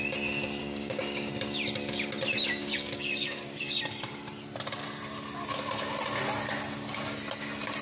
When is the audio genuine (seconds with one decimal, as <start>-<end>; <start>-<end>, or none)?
0.0-0.6; 1.3-2.6; 3.8-7.8